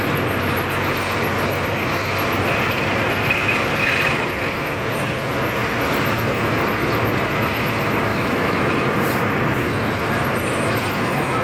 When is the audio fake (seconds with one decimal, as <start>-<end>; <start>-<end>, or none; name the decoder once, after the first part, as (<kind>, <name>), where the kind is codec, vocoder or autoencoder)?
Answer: 8.1-8.7 (autoencoder, DAC-VAE)